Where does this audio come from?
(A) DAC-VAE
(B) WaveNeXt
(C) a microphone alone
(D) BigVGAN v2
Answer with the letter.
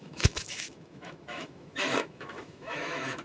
A